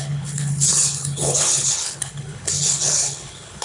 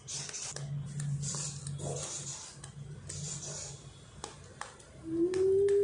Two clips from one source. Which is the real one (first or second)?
second